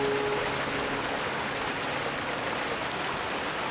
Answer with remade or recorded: recorded